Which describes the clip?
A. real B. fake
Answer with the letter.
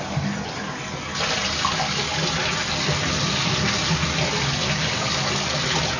A